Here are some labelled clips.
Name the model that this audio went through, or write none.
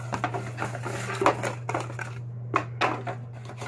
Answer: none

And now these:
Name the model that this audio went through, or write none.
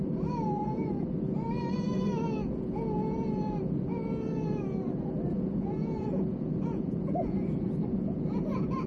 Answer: vocoder, Vocos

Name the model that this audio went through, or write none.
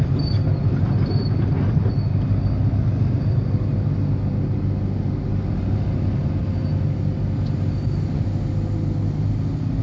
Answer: none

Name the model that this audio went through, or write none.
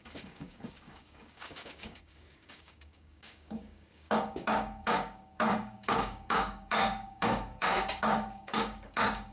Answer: codec, DAC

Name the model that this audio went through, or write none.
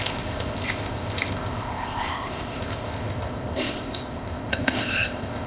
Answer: codec, ZipCodec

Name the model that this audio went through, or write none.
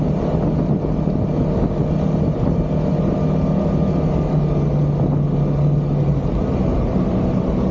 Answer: none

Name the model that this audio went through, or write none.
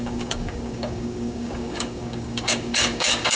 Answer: codec, DAC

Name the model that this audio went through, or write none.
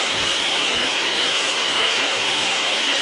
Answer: codec, SNAC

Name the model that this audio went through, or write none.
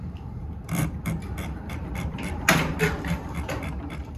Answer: vocoder, BigVGAN v2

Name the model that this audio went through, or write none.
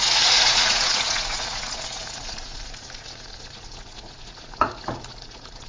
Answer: vocoder, Vocos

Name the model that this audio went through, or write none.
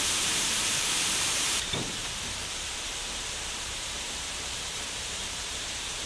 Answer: vocoder, BigVGAN v2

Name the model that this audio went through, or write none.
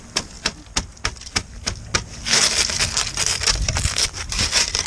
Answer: none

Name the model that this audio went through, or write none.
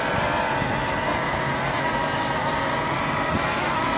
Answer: none